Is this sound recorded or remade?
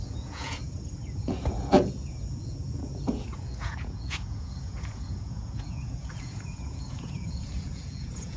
remade